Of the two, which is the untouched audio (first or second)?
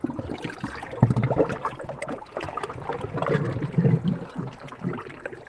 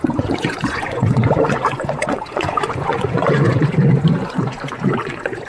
first